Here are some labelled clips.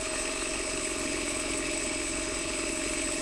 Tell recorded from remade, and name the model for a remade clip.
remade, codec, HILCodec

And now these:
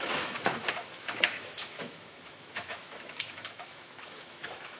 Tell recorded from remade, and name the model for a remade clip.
remade, autoencoder, DAC-VAE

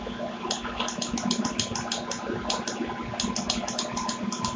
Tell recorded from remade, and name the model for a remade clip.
recorded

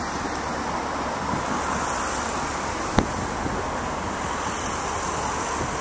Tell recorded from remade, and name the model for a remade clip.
recorded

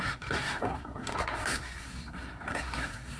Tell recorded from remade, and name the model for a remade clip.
remade, codec, SNAC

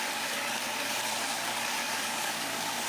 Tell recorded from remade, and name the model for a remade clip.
remade, codec, DAC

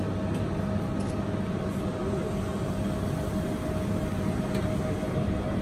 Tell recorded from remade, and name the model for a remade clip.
recorded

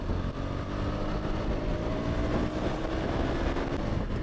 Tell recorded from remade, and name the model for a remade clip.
recorded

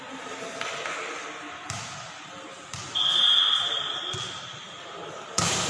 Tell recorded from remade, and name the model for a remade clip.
remade, vocoder, BigVGAN v2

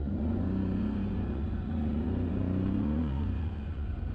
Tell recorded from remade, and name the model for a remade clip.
remade, vocoder, Vocos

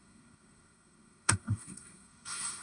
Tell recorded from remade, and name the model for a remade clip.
remade, codec, SNAC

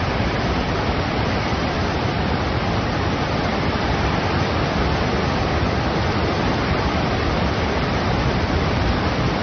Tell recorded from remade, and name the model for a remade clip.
remade, vocoder, BigVGAN v2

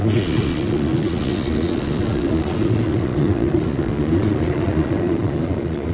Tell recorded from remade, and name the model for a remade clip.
remade, vocoder, Vocos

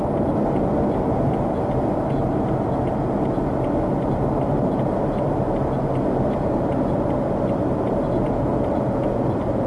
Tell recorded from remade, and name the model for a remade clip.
recorded